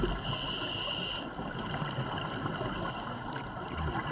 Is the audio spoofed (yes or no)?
no